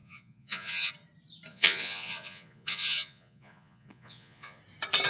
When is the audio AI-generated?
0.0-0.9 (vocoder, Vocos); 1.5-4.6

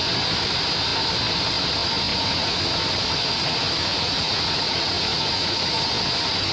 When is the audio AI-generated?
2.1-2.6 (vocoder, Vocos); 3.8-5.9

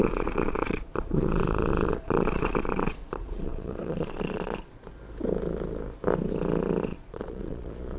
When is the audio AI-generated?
0.0-4.8 (vocoder, Vocos); 6.9-8.0

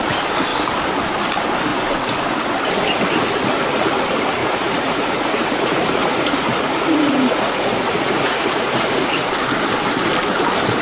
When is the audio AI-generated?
1.7-2.5 (vocoder, Vocos); 4.4-9.3